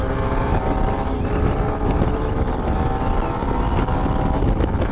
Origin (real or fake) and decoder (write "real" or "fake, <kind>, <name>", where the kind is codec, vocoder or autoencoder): real